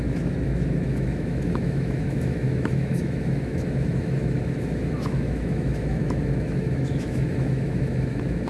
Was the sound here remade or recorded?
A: remade